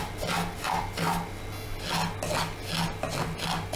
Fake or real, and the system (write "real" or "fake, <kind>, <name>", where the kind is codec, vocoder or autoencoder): real